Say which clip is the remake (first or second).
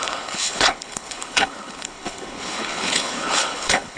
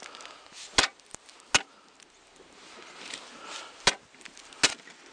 first